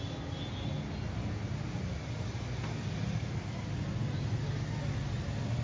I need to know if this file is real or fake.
real